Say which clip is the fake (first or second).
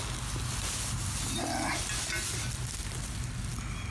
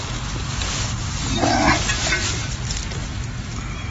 second